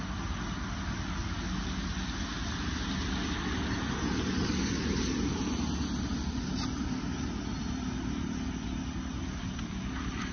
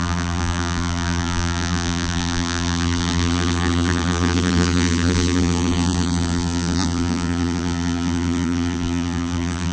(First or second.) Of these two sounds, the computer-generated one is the second